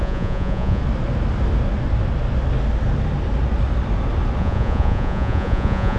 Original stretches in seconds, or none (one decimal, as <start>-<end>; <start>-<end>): 0.8-4.4